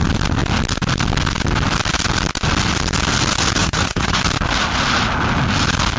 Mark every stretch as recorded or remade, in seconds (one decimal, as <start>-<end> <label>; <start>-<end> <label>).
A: 0.0-3.6 recorded; 3.6-4.2 remade; 4.2-6.0 recorded